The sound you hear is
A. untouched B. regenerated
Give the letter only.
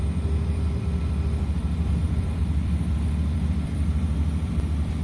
B